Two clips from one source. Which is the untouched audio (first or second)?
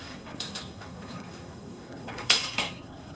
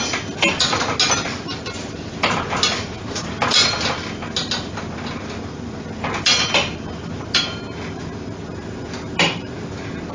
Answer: second